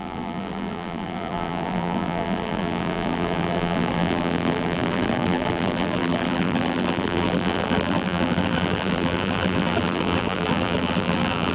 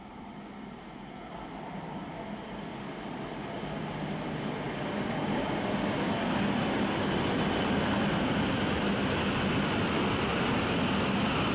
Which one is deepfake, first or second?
first